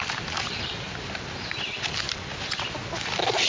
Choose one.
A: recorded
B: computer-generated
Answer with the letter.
A